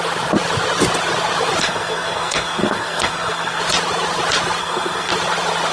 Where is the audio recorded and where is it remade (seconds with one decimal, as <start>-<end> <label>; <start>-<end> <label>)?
0.0-1.6 recorded; 1.6-3.6 remade; 3.6-4.6 recorded; 4.6-5.1 remade; 5.1-5.7 recorded